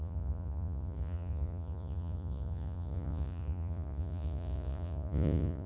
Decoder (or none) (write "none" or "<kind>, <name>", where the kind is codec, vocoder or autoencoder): vocoder, Vocos